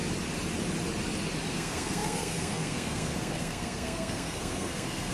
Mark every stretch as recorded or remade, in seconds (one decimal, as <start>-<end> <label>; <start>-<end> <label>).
0.0-1.5 recorded; 1.5-5.1 remade

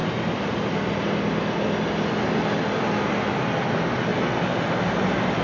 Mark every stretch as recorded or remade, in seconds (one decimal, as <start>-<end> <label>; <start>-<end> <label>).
0.0-5.4 recorded

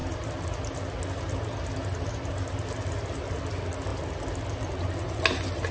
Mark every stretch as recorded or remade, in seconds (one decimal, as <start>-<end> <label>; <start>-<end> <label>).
0.0-5.7 recorded

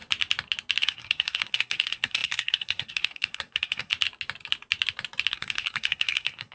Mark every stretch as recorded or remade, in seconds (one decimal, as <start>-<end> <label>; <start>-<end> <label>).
0.0-0.8 recorded; 0.8-3.9 remade; 3.9-5.3 recorded; 5.3-6.5 remade

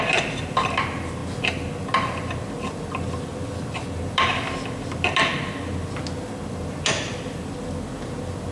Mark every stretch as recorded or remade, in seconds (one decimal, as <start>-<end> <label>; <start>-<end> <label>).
0.0-8.5 recorded

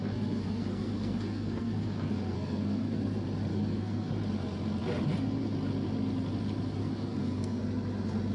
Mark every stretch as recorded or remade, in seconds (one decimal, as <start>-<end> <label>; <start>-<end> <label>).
0.0-3.0 remade; 3.0-3.5 recorded; 3.5-4.1 remade; 4.1-6.8 recorded; 6.8-7.6 remade; 7.6-8.3 recorded

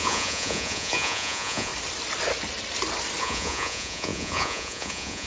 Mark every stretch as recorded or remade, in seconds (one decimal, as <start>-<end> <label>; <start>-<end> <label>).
0.0-1.7 remade; 1.7-3.2 recorded; 3.2-5.3 remade